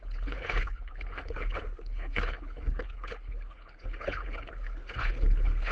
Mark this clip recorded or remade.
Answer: remade